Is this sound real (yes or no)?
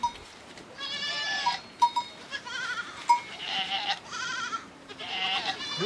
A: no